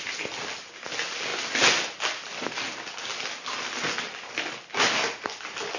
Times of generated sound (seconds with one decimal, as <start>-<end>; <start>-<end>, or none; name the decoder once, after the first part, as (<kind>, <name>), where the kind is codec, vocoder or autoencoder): none